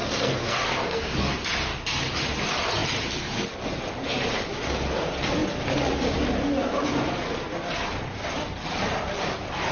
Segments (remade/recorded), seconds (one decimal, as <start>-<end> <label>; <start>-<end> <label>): 0.0-1.4 remade; 1.4-9.7 recorded